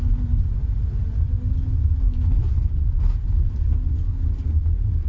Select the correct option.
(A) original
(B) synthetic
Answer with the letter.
A